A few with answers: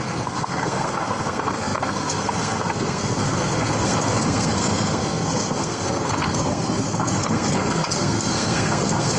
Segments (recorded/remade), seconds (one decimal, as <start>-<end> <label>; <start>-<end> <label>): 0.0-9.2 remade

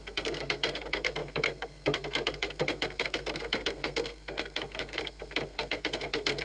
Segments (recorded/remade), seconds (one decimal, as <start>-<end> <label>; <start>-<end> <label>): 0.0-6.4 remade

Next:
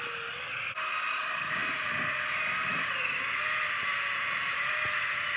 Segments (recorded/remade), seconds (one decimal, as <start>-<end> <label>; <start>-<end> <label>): 0.0-1.6 recorded; 1.6-2.9 remade; 2.9-3.8 recorded; 3.8-4.7 remade; 4.7-5.4 recorded